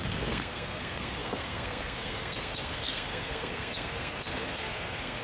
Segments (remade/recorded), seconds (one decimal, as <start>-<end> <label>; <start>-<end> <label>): 0.0-5.2 remade